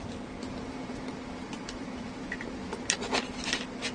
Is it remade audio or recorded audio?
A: recorded